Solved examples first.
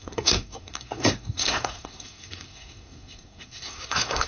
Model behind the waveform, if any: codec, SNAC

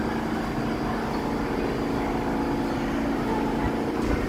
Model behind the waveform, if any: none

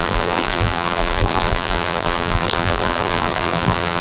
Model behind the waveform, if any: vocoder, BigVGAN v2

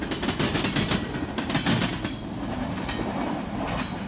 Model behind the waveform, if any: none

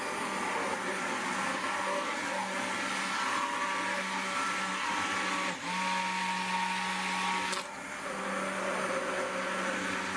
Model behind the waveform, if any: none